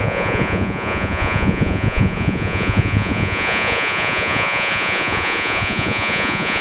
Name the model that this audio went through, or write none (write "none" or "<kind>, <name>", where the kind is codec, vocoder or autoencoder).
vocoder, Vocos